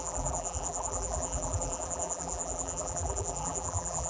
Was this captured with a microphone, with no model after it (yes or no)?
no